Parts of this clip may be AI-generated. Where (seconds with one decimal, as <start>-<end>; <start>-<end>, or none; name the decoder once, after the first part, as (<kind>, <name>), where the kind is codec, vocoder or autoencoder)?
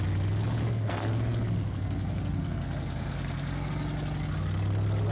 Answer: 0.6-3.7 (codec, SNAC)